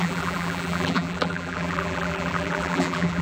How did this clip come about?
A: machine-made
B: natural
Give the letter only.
A